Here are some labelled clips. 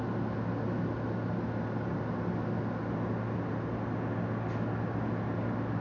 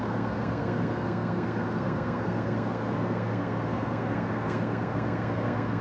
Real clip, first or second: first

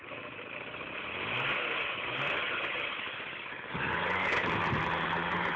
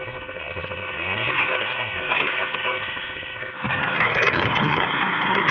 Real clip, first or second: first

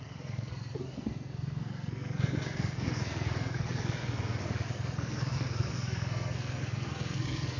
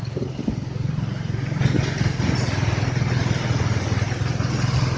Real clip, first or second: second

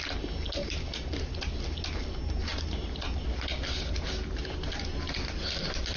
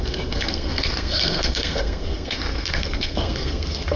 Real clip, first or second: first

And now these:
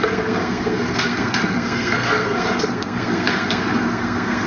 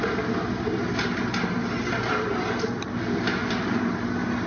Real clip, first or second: second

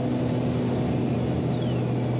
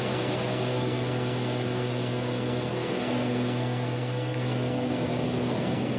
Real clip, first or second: first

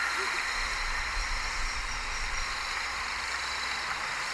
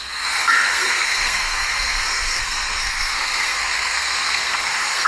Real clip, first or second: first